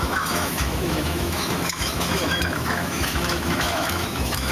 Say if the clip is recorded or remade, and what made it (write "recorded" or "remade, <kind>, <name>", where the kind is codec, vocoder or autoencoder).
remade, autoencoder, DAC-VAE